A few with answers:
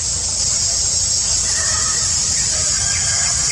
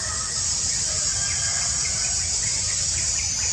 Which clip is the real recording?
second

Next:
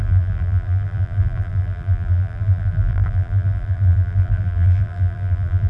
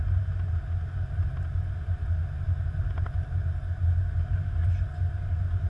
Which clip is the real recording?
second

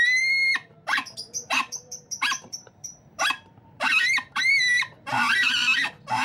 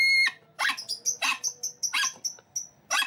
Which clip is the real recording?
second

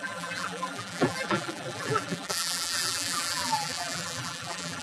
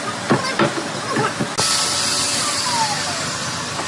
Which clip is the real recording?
second